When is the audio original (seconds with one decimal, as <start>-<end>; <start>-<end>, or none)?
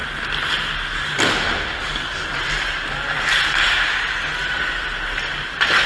0.0-1.8; 2.3-5.9